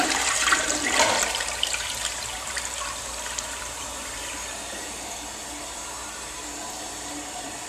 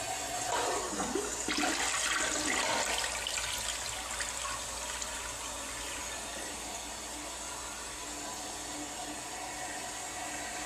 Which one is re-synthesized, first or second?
first